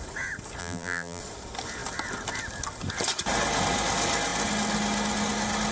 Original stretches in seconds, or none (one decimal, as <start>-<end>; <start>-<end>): 0.0-0.6; 1.2-5.7

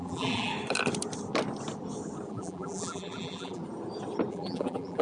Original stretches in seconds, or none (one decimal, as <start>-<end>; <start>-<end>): 0.5-2.3; 3.6-4.3

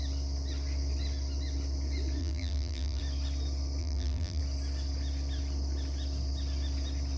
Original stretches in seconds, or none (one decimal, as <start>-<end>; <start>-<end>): 0.0-2.2; 3.0-3.8; 4.4-7.2

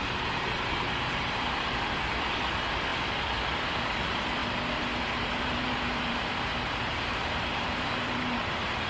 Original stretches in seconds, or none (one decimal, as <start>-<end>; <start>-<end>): 2.9-3.6; 4.4-5.0

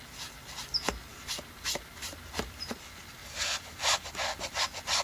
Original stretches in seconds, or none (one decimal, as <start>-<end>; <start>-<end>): 0.0-1.1; 2.7-3.2; 4.1-5.0

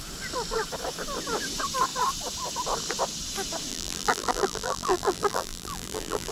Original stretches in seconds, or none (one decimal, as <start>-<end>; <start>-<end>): 0.0-3.7

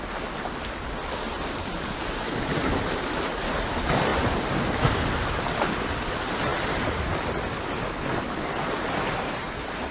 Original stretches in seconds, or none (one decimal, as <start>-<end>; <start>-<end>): 0.0-9.9